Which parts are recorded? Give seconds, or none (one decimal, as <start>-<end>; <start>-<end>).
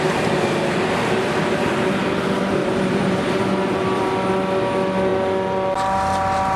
0.0-2.6; 3.3-6.6